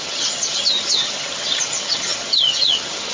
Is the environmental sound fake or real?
fake